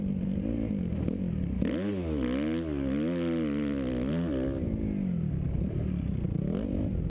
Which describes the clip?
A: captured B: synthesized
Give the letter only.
A